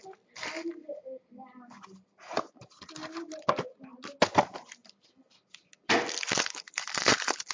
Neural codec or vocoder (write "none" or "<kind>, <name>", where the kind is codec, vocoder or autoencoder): none